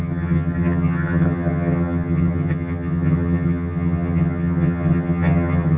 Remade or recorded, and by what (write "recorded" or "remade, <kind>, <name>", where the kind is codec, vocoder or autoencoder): remade, vocoder, HiFi-GAN